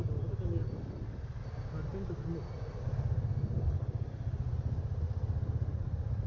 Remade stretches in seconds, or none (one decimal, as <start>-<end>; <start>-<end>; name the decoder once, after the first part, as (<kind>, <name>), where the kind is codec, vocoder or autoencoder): none